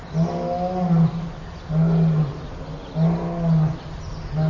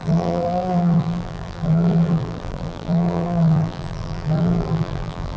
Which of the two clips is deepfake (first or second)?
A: second